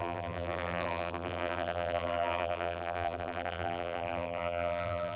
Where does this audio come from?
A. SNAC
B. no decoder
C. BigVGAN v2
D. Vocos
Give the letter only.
C